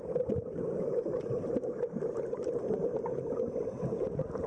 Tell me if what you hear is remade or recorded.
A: remade